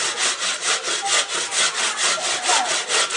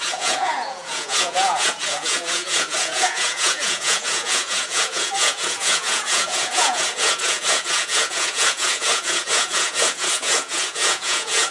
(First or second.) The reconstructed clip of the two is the second